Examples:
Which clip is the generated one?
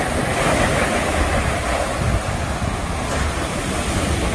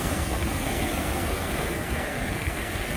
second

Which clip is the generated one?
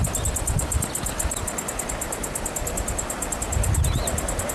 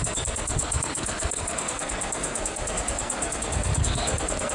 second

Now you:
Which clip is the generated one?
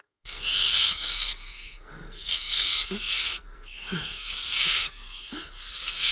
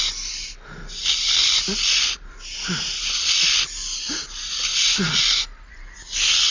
first